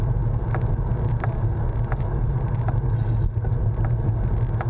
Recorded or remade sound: recorded